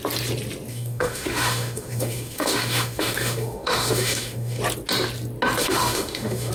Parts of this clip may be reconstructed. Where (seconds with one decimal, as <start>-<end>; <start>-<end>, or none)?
0.7-4.6; 5.6-6.5